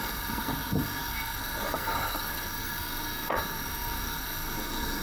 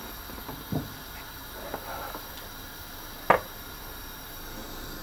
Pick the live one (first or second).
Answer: second